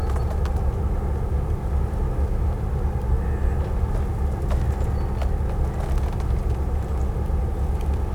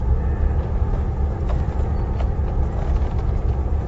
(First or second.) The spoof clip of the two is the second